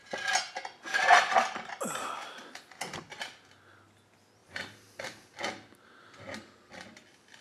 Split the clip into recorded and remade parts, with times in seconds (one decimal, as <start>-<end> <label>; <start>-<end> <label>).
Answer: 0.0-7.4 recorded

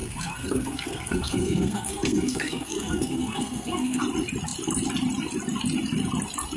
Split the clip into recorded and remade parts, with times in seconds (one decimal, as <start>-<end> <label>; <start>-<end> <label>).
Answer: 0.0-4.0 remade; 4.0-6.6 recorded

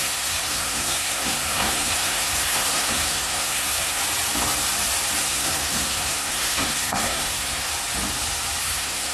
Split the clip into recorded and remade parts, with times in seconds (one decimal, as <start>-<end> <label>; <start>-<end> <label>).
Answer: 0.0-4.0 remade; 4.0-5.2 recorded; 5.2-7.7 remade; 7.7-8.6 recorded; 8.6-9.1 remade

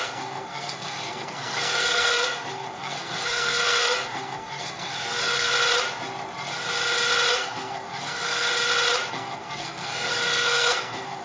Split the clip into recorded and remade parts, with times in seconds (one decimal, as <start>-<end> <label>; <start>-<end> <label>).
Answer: 0.0-5.5 remade; 5.5-7.3 recorded; 7.3-8.5 remade; 8.5-9.1 recorded; 9.1-11.2 remade

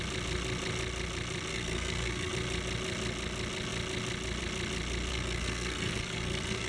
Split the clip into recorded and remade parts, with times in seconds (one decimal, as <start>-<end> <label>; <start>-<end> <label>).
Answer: 0.0-1.5 recorded; 1.5-2.3 remade; 2.3-5.1 recorded; 5.1-6.7 remade

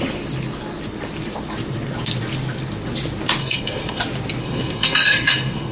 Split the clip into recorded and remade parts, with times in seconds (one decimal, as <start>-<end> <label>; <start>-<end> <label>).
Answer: 0.0-3.4 recorded; 3.4-4.0 remade; 4.0-4.4 recorded; 4.4-5.7 remade

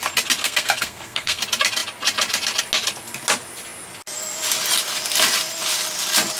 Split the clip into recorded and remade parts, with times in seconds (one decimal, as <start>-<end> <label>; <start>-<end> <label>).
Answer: 0.0-0.4 recorded; 0.4-1.4 remade; 1.4-6.4 recorded